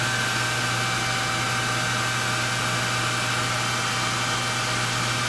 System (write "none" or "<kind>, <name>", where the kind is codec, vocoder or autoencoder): none